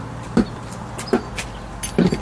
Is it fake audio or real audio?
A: real